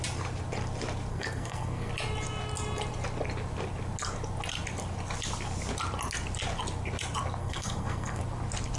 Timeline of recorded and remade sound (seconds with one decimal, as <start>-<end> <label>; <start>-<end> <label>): 0.0-1.1 recorded; 1.1-1.9 remade; 1.9-7.4 recorded; 7.4-8.2 remade; 8.2-8.8 recorded